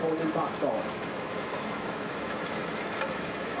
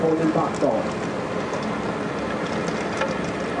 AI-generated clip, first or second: first